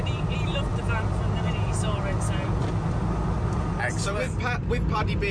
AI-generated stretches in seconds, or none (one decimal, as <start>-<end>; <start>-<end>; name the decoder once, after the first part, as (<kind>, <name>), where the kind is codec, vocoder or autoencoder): none